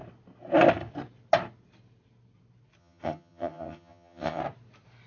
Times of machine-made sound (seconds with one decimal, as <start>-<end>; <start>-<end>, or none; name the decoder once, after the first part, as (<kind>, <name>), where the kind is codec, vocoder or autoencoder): 2.8-4.4 (vocoder, HiFi-GAN)